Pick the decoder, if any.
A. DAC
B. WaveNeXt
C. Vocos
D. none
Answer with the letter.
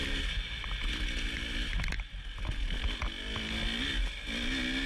D